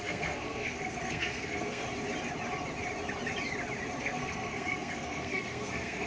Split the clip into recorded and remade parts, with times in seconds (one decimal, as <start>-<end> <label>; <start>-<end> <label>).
0.0-1.8 remade; 1.8-4.0 recorded; 4.0-6.1 remade